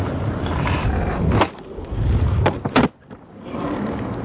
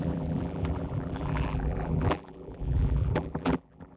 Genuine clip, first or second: first